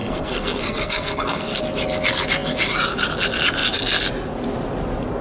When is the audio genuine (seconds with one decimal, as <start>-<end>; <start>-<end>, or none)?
1.6-5.2